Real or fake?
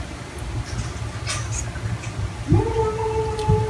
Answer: real